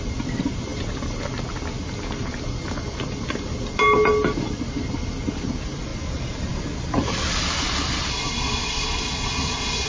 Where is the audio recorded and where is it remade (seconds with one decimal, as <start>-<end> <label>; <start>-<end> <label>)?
0.0-8.1 recorded; 8.1-9.9 remade